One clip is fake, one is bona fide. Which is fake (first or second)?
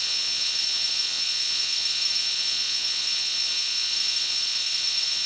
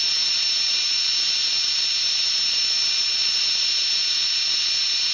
first